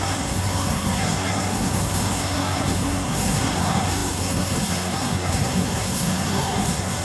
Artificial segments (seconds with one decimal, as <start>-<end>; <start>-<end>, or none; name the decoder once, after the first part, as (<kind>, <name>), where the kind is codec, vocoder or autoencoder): 0.0-7.0 (codec, SNAC)